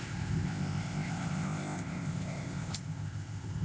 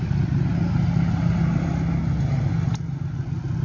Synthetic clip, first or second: first